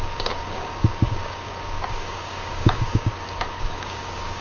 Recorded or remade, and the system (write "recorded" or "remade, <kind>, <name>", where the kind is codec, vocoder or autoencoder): remade, codec, DAC